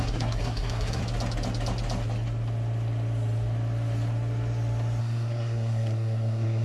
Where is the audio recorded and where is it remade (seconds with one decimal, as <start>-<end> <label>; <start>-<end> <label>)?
0.0-1.0 remade; 1.0-5.0 recorded; 5.0-6.6 remade